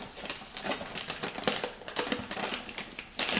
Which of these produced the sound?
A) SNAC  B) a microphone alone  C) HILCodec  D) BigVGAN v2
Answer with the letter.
B